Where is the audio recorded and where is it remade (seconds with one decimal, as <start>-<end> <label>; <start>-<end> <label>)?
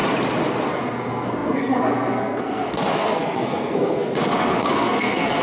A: 0.0-0.7 recorded; 0.7-5.4 remade